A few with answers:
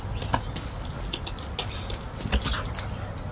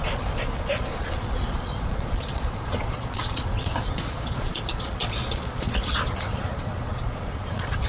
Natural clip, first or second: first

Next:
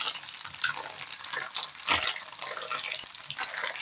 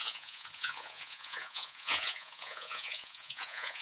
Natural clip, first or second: first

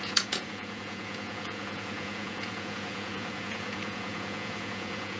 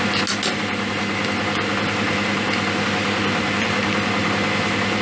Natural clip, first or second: second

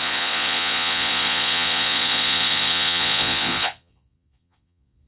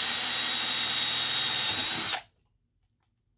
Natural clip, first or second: second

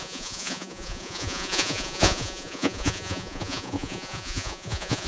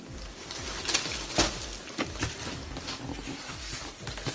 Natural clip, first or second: second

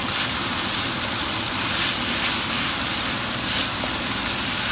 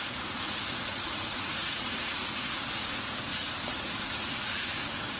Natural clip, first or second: first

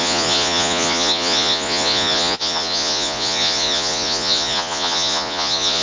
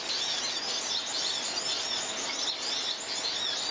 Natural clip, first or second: second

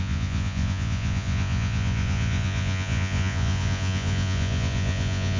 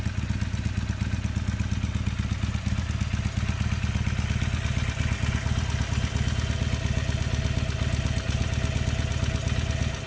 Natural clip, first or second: second